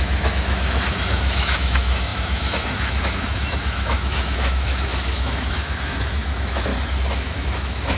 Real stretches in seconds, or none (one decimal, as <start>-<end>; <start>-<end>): 6.7-7.2